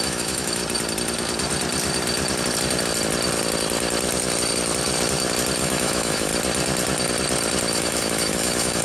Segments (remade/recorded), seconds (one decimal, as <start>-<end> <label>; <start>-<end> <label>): 0.0-0.6 remade; 0.6-5.6 recorded; 5.6-6.3 remade; 6.3-7.7 recorded; 7.7-8.8 remade